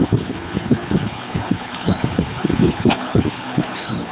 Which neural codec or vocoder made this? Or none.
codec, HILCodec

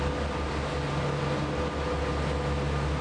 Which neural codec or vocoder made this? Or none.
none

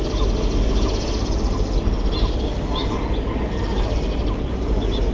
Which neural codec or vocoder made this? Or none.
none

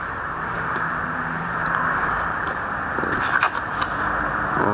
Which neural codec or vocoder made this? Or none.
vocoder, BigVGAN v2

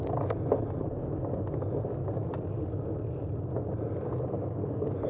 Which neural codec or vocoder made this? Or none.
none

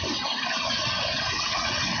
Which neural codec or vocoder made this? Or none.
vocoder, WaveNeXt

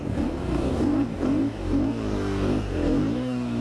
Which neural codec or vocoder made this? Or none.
codec, DAC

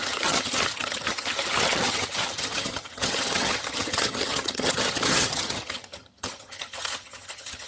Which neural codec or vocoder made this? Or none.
vocoder, HiFi-GAN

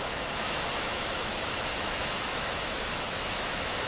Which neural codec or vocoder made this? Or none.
autoencoder, DAC-VAE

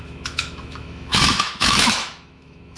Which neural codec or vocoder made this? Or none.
autoencoder, DAC-VAE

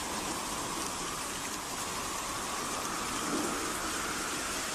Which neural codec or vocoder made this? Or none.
none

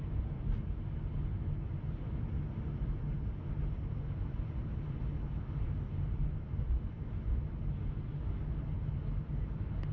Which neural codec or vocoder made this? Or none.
none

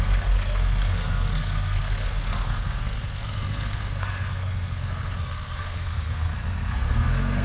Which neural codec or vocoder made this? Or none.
codec, SNAC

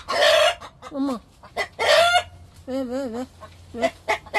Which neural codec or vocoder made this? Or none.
none